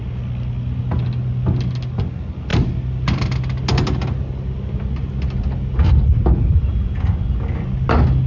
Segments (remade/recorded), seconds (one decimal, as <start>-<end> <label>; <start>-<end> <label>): 0.0-8.3 recorded